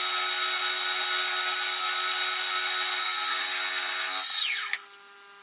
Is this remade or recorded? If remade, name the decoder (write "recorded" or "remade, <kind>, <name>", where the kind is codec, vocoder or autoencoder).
recorded